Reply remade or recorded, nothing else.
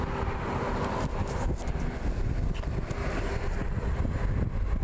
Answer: recorded